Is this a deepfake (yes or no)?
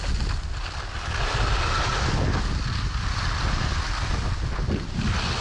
no